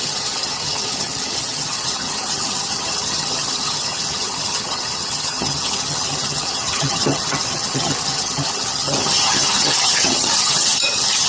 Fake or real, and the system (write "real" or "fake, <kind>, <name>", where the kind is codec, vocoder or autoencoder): fake, vocoder, HiFi-GAN